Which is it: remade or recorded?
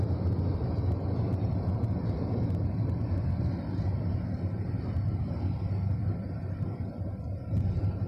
recorded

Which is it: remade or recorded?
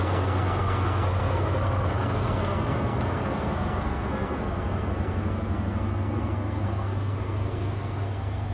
remade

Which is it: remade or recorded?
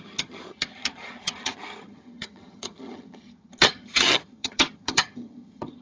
remade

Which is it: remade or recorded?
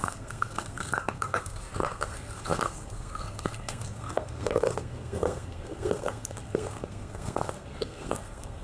remade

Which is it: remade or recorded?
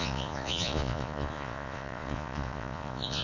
remade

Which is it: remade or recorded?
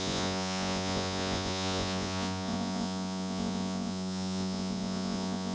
remade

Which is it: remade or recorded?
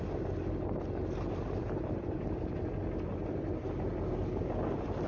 recorded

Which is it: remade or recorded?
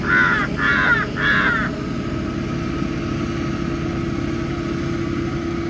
recorded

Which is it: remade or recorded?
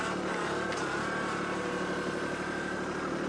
recorded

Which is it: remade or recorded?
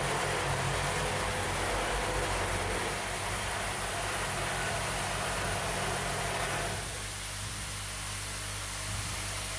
recorded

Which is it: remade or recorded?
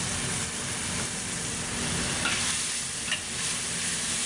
recorded